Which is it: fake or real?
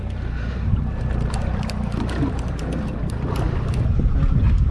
real